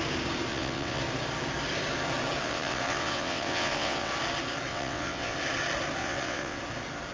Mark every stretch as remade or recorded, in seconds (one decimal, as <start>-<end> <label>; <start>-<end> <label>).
0.0-0.5 recorded; 0.5-1.0 remade; 1.0-2.4 recorded; 2.4-4.1 remade; 4.1-4.7 recorded; 4.7-5.4 remade; 5.4-6.0 recorded; 6.0-6.6 remade; 6.6-7.1 recorded